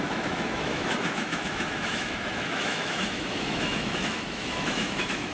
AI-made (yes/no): yes